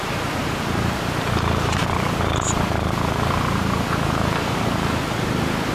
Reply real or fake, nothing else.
fake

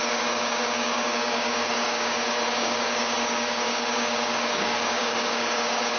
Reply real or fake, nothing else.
fake